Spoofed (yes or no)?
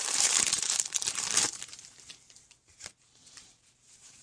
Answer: yes